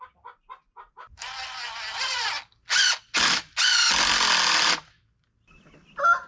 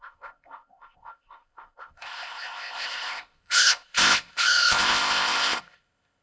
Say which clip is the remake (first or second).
second